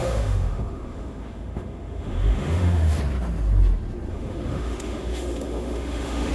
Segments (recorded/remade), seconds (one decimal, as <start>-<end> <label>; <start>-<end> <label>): 0.0-3.0 remade; 3.0-4.1 recorded; 4.1-6.3 remade